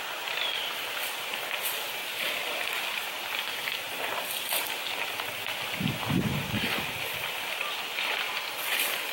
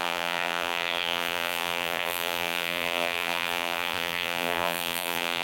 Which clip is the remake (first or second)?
second